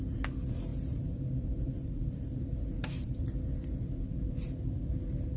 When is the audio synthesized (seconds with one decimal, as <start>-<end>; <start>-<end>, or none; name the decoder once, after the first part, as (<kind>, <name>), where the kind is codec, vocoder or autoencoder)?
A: 0.7-3.9 (vocoder, BigVGAN v2)

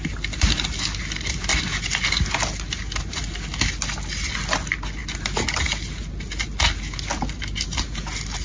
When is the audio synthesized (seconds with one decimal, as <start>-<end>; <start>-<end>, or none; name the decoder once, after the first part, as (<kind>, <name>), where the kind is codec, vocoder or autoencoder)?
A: none

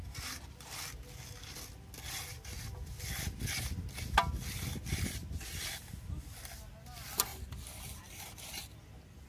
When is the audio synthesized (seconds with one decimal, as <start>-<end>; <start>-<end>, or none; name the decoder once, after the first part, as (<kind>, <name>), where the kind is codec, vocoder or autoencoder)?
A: none

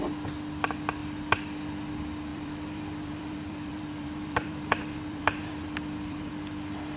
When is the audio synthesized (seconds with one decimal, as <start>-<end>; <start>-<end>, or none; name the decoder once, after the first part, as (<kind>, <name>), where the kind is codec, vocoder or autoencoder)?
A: 2.3-6.3 (vocoder, BigVGAN v2)

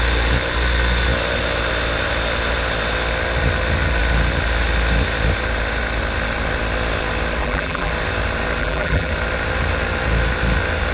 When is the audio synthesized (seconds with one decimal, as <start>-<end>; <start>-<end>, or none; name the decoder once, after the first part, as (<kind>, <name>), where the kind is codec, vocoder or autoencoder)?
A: 7.4-7.9 (vocoder, BigVGAN v2); 8.6-9.1

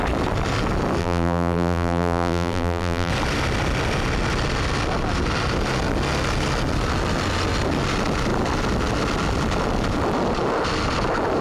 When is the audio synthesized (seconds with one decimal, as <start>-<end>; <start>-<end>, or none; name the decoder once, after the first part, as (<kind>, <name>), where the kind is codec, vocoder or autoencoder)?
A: 1.0-3.1 (vocoder, BigVGAN v2)